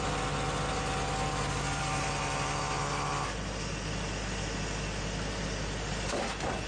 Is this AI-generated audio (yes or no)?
no